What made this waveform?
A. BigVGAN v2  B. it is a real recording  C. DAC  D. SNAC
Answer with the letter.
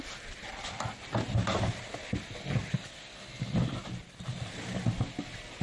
B